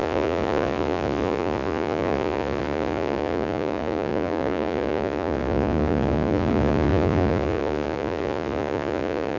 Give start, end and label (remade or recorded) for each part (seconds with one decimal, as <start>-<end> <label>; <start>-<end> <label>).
0.0-9.4 remade